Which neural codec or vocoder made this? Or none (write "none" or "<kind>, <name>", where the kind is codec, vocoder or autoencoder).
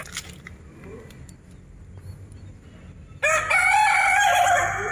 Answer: none